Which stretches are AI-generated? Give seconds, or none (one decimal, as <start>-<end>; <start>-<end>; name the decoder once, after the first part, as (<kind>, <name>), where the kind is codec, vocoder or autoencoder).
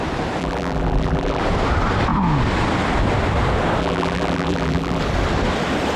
0.4-1.4 (vocoder, BigVGAN v2); 3.8-5.0